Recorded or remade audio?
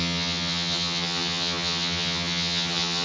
remade